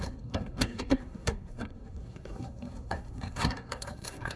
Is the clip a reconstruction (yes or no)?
yes